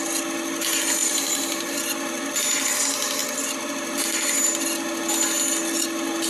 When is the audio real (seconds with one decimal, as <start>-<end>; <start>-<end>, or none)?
0.0-1.0; 1.8-6.3